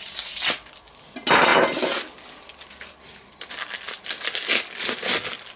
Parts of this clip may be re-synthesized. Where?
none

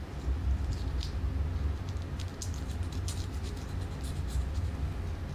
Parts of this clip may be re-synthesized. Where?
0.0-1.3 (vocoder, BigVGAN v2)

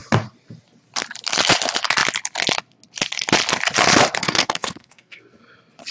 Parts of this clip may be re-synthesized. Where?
4.2-5.4 (codec, SNAC)

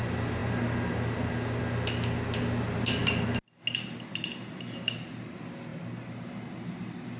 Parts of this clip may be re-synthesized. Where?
none